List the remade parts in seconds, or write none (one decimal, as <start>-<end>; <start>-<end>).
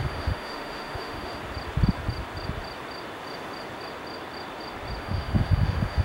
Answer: 0.0-1.4; 5.0-6.0